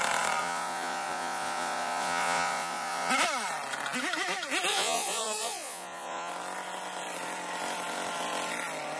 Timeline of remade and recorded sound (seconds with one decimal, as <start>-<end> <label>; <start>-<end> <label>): 0.0-0.4 recorded; 0.4-3.1 remade; 3.1-4.7 recorded; 4.7-6.3 remade; 6.3-9.0 recorded